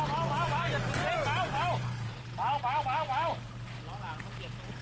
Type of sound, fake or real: real